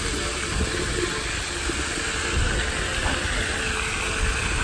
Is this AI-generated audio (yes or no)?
no